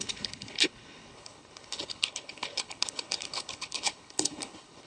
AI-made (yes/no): yes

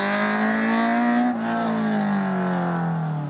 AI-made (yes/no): no